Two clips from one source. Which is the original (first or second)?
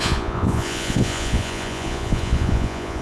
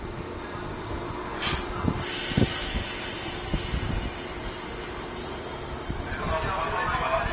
second